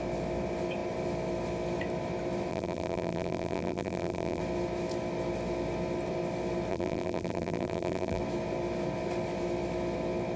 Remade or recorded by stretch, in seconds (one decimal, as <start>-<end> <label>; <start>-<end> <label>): 0.0-2.5 recorded; 2.5-4.4 remade; 4.4-6.7 recorded; 6.7-8.2 remade; 8.2-10.4 recorded